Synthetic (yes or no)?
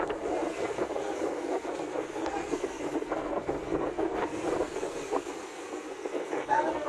yes